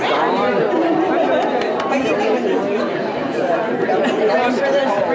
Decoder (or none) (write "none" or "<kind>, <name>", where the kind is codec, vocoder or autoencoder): none